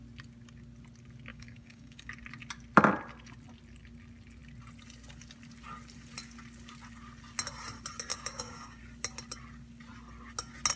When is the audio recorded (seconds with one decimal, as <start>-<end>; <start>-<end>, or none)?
0.0-1.3; 2.1-8.1; 8.8-10.8